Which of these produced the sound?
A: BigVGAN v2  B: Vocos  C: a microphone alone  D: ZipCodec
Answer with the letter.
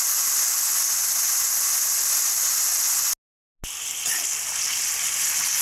C